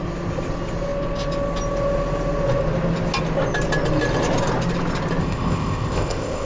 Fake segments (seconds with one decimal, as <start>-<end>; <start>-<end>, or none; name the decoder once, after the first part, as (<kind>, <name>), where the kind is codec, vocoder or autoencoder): 5.2-6.5 (codec, ZipCodec)